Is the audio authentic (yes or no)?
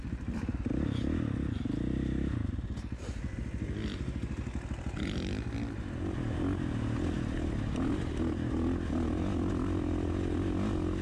yes